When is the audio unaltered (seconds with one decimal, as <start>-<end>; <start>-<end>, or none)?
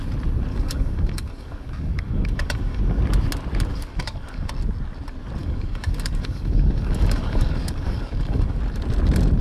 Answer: 0.0-0.5; 2.8-3.7; 4.5-5.4; 8.6-9.4